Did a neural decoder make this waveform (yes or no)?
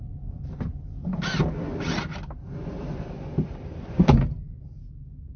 no